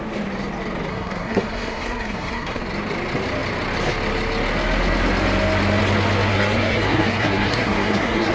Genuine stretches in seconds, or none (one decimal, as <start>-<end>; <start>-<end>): 0.0-0.9; 2.6-6.3